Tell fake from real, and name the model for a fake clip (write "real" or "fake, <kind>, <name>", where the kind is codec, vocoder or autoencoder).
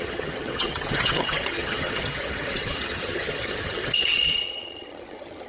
fake, vocoder, HiFi-GAN